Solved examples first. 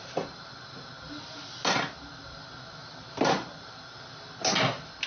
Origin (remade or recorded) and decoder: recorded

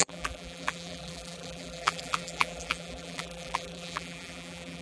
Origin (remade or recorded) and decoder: remade, vocoder, BigVGAN v2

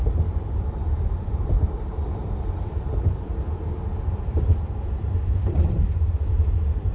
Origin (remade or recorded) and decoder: remade, vocoder, BigVGAN v2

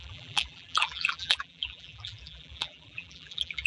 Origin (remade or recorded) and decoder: remade, vocoder, BigVGAN v2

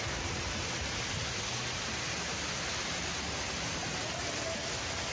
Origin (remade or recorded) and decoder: recorded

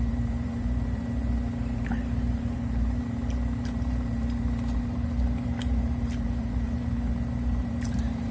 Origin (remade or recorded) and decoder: remade, vocoder, BigVGAN v2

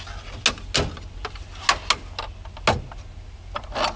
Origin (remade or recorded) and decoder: recorded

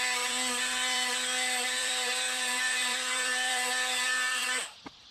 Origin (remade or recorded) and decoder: remade, vocoder, BigVGAN v2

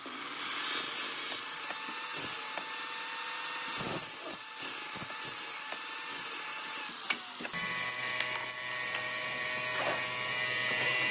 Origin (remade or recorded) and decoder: recorded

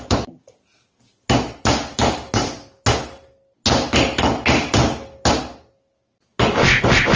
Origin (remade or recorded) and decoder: recorded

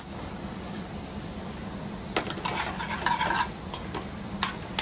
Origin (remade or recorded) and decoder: recorded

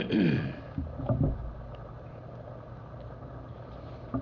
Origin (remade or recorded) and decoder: recorded